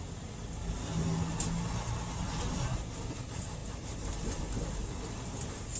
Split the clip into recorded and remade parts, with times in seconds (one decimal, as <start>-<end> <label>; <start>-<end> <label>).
0.0-5.8 recorded